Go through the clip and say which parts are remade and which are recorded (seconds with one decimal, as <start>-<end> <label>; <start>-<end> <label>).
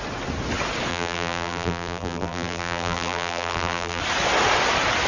0.0-0.9 recorded; 0.9-4.0 remade; 4.0-5.1 recorded